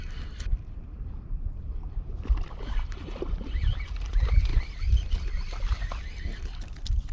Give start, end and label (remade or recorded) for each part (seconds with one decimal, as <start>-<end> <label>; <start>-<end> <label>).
0.0-7.1 recorded